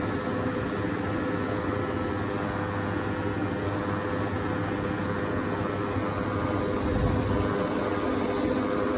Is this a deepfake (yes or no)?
no